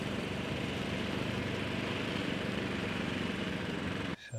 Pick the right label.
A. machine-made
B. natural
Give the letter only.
A